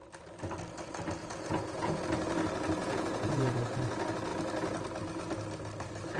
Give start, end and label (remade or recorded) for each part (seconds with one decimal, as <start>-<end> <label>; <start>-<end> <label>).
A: 0.0-1.2 recorded; 1.2-2.0 remade; 2.0-2.8 recorded; 2.8-3.7 remade; 3.7-6.2 recorded